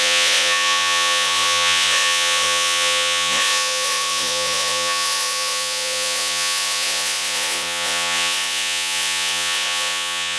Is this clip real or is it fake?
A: fake